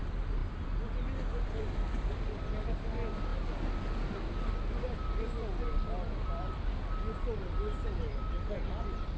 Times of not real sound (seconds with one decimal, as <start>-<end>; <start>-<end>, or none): none